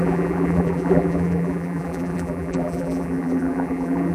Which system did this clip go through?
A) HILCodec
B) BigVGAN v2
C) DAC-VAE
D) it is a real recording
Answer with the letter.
B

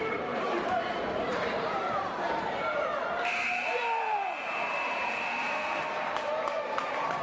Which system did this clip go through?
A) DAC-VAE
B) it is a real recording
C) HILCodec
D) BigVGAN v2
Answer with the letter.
D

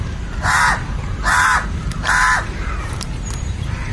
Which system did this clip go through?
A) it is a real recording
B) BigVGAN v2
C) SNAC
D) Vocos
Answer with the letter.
B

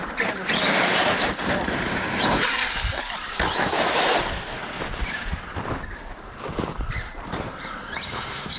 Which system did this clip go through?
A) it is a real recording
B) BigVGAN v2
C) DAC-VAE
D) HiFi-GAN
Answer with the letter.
B